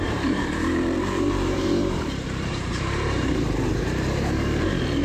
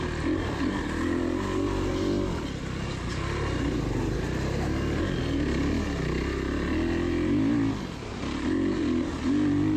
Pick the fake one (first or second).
first